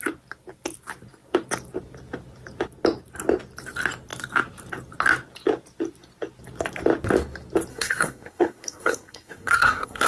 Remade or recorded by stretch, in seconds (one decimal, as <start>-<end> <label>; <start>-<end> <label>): 0.0-7.7 recorded; 7.7-10.1 remade